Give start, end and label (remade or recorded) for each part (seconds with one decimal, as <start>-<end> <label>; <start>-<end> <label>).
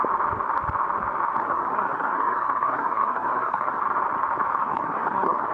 0.0-1.4 recorded; 1.4-3.8 remade; 3.8-4.6 recorded; 4.6-5.5 remade